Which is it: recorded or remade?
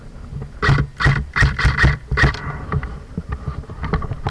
recorded